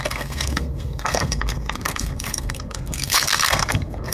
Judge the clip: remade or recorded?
remade